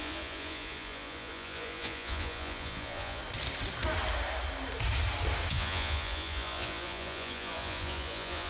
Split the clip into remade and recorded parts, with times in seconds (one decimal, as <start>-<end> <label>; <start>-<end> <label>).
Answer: 0.0-3.2 remade; 3.2-5.5 recorded; 5.5-8.5 remade